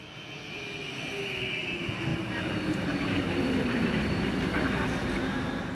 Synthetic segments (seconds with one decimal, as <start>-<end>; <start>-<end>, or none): 2.1-5.7